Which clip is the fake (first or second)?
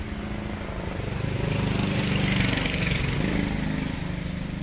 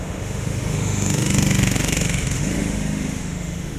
second